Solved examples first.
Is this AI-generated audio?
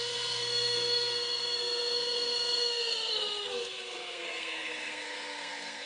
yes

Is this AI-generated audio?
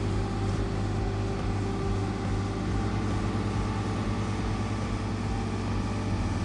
no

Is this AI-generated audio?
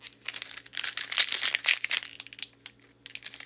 no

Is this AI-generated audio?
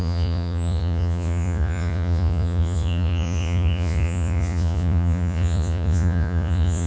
yes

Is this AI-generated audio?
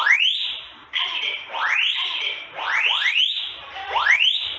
yes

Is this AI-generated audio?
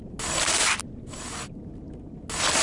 no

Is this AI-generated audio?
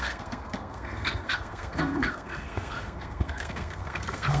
yes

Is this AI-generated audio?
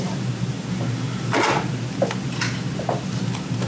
no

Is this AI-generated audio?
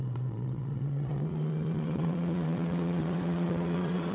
yes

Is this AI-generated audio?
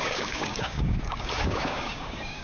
yes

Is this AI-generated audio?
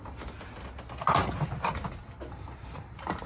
no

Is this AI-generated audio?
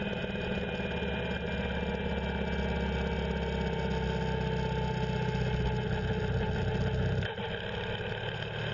no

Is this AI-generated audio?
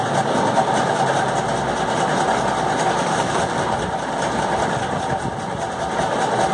no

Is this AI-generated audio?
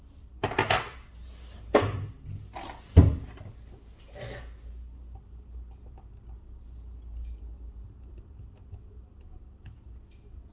no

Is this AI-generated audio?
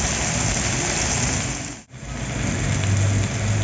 no